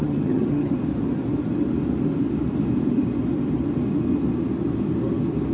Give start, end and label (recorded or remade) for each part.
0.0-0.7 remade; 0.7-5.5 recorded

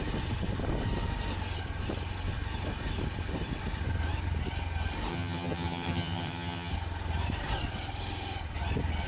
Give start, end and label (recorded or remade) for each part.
0.0-5.1 recorded; 5.1-6.7 remade; 6.7-9.1 recorded

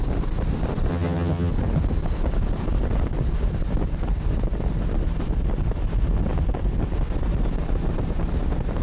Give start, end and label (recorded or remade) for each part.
0.0-0.9 recorded; 0.9-1.5 remade; 1.5-8.8 recorded

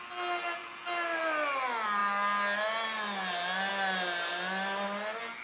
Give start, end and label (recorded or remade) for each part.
0.0-5.4 recorded

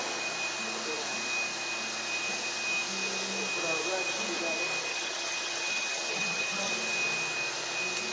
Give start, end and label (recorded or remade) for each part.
0.0-4.9 recorded; 4.9-6.7 remade; 6.7-8.1 recorded

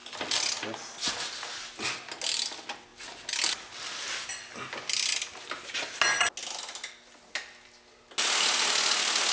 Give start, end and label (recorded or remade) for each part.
0.0-9.3 recorded

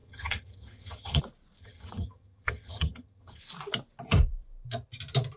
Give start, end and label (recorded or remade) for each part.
0.0-1.2 remade; 1.2-1.6 recorded; 1.6-3.4 remade; 3.4-5.4 recorded

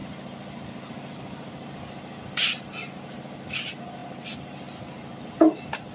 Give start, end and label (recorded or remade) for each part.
0.0-5.9 recorded